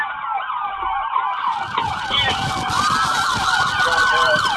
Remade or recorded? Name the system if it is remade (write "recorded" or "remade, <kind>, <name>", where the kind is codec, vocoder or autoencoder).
recorded